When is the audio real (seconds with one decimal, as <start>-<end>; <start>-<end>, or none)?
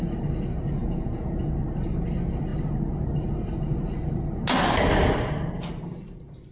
0.0-0.8; 1.5-6.5